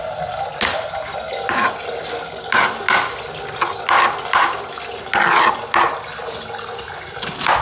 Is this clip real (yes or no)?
yes